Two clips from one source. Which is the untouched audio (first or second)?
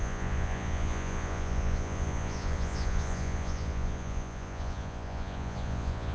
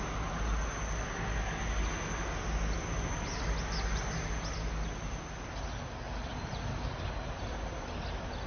second